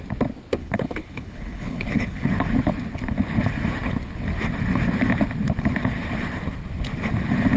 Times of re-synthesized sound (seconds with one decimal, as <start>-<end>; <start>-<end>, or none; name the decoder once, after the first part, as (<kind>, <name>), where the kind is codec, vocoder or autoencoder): 0.6-2.3 (codec, HILCodec)